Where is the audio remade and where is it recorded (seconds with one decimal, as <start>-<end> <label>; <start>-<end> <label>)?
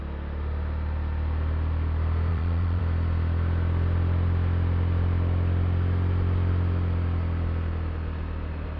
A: 0.0-2.3 recorded; 2.3-2.8 remade; 2.8-8.8 recorded